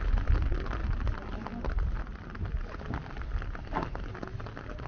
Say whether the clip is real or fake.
real